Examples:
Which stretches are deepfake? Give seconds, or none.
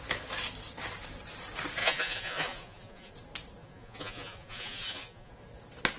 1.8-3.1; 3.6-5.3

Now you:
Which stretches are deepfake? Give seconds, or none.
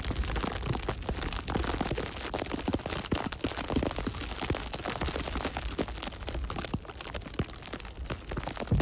none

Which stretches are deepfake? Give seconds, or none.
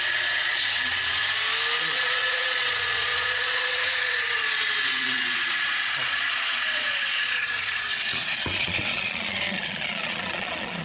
0.0-1.2; 1.8-10.8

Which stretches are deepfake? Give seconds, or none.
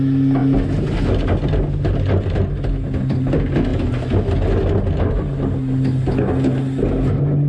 none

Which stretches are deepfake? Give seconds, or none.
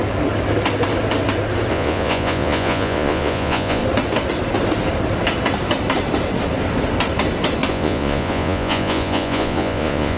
1.7-3.8; 7.7-10.2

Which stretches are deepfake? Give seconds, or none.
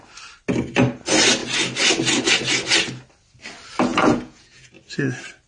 3.9-4.7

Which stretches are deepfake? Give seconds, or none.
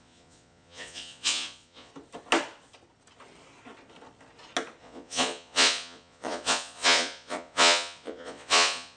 0.0-1.9; 4.8-9.0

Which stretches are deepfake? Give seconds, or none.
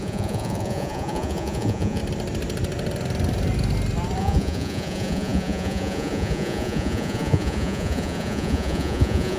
0.0-2.0; 4.2-9.4